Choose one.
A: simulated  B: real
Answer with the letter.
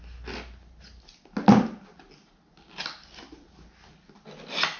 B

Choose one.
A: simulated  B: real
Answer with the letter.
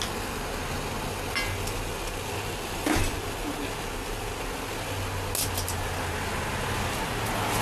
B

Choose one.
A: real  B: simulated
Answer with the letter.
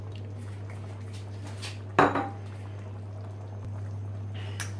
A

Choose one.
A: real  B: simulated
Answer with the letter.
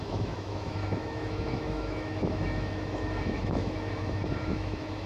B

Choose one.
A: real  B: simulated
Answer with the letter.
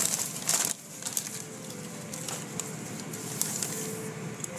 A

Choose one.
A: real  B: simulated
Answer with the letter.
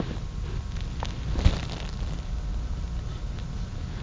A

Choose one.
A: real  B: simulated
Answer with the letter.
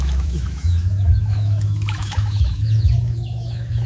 B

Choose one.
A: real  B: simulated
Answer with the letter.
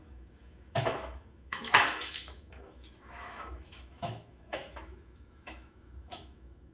B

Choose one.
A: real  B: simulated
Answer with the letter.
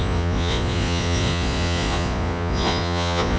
B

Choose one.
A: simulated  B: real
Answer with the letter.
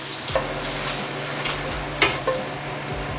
B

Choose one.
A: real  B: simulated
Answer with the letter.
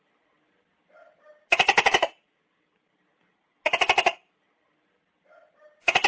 A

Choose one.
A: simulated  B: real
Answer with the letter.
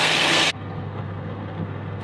A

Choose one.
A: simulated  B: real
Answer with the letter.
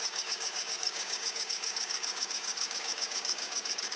A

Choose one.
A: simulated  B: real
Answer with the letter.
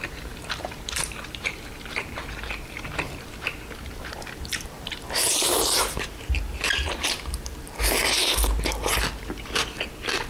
A